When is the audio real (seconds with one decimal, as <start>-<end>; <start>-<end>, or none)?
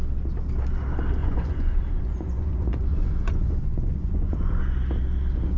0.0-1.2; 4.6-5.6